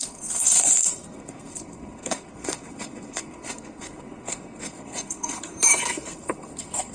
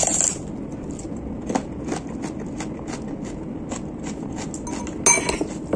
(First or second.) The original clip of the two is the second